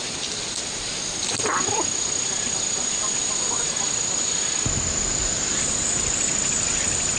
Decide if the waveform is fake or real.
real